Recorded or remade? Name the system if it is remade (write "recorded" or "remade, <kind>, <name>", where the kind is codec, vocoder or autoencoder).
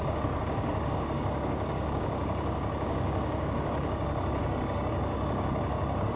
remade, codec, DAC